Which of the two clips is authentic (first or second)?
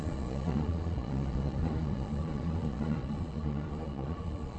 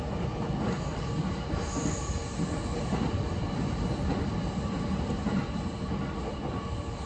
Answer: second